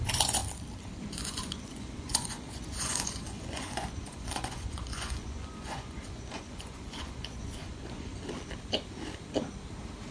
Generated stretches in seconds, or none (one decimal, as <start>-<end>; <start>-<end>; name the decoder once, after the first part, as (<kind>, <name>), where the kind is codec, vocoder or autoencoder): 0.0-0.4 (vocoder, Vocos); 1.0-8.1